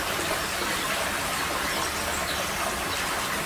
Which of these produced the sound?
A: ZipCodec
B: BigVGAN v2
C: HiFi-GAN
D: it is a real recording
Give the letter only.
D